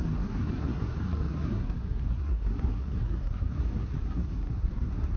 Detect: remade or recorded remade